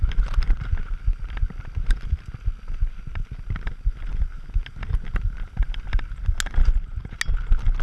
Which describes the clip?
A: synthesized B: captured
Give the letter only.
B